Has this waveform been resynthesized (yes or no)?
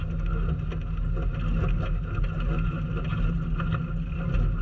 no